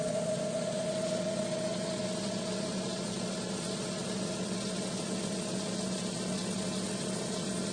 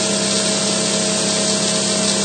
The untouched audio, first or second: second